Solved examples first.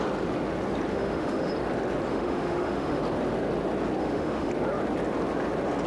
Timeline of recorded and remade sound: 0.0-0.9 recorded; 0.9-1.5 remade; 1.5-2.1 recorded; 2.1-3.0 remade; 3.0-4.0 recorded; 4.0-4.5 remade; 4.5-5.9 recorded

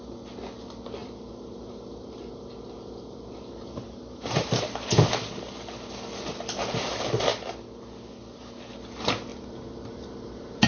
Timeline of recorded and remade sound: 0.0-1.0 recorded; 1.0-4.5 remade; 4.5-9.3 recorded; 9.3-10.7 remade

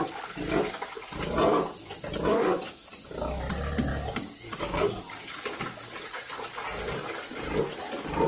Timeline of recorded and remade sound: 0.0-2.3 recorded; 2.3-2.9 remade; 2.9-3.9 recorded; 3.9-5.0 remade; 5.0-8.3 recorded

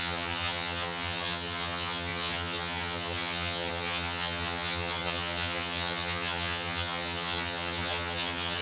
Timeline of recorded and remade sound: 0.0-8.6 remade

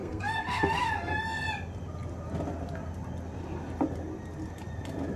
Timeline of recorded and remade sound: 0.0-0.9 remade; 0.9-5.2 recorded

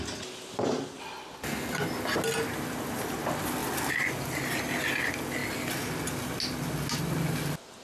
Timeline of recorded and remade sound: 0.0-3.6 recorded; 3.6-4.6 remade; 4.6-7.8 recorded

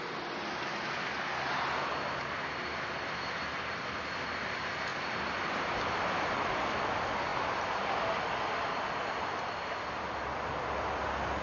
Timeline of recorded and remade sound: 0.0-11.4 recorded